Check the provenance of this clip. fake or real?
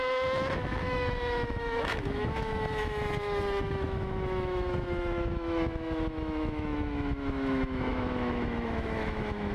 fake